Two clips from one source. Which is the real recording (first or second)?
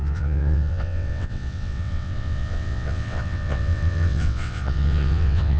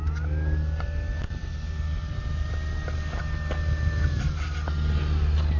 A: second